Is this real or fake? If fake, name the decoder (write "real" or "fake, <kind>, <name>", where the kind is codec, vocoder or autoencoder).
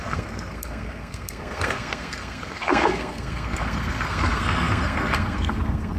fake, codec, SNAC